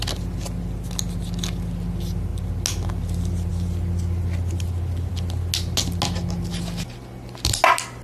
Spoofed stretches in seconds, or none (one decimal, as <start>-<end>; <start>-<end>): none